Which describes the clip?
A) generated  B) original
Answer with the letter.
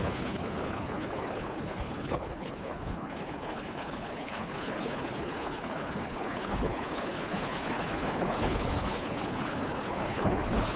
A